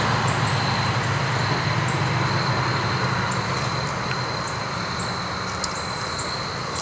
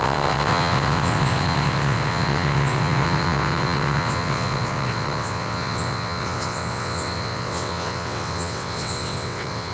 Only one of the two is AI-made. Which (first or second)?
second